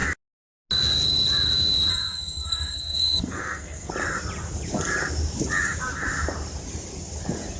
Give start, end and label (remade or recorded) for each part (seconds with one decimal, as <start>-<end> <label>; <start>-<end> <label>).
0.0-1.9 recorded; 1.9-3.9 remade; 3.9-7.6 recorded